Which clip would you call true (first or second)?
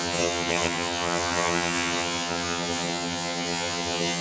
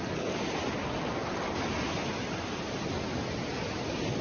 second